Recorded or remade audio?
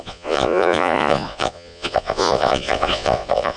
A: remade